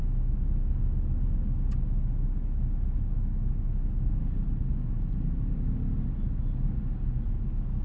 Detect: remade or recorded recorded